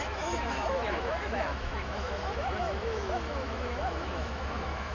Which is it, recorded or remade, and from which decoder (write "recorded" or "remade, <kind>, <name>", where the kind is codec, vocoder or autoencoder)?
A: remade, autoencoder, DAC-VAE